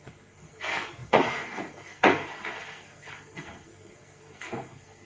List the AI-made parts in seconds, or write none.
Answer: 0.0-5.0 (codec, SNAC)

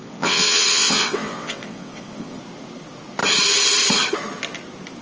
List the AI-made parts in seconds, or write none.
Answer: 0.0-2.4 (vocoder, WaveNeXt)

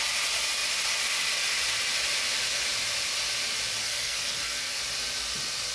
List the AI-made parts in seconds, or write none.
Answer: 3.8-4.8 (codec, SNAC)

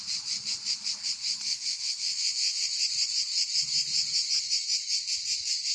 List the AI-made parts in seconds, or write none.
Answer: 1.5-2.6 (vocoder, Vocos)